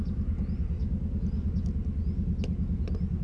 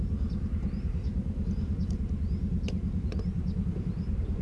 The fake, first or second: second